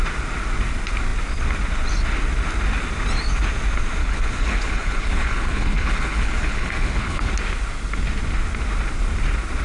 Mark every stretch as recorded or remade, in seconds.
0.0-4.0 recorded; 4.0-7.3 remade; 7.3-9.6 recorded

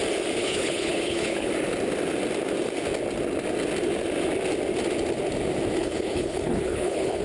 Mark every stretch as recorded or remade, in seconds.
0.0-0.4 recorded; 0.4-1.5 remade; 1.5-5.8 recorded; 5.8-7.2 remade